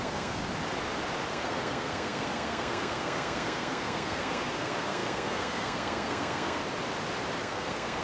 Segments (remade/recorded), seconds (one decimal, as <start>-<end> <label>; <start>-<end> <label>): 0.0-0.4 remade; 0.4-1.3 recorded; 1.3-6.6 remade; 6.6-7.4 recorded; 7.4-8.0 remade

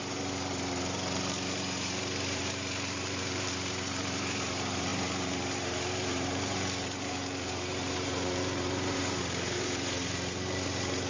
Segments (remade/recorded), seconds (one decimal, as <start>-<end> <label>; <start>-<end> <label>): 0.0-11.1 remade

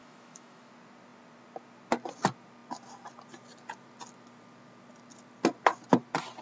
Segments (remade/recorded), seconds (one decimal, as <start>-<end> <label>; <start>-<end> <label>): 0.0-0.7 remade; 0.7-6.4 recorded

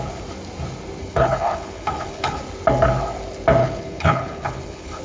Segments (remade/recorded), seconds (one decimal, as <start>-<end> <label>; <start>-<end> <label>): 0.0-1.0 recorded; 1.0-2.4 remade; 2.4-3.6 recorded; 3.6-5.0 remade

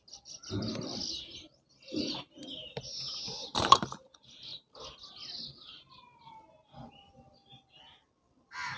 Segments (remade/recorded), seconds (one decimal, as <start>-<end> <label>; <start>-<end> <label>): 0.0-8.8 recorded